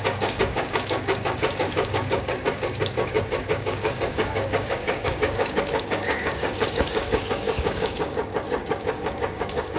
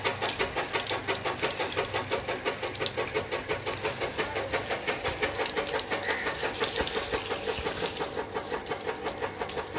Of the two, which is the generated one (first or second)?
first